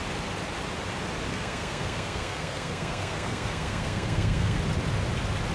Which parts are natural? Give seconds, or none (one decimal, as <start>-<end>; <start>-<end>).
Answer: 0.0-1.3; 4.6-5.5